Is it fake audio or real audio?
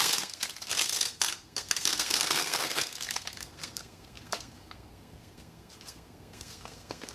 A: fake